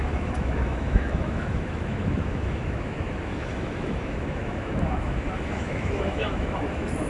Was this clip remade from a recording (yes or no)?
yes